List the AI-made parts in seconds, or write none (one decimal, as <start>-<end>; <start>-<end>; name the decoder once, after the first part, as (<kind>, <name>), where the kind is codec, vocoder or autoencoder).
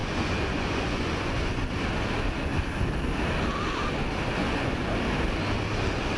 0.0-1.6 (vocoder, Vocos); 4.4-4.9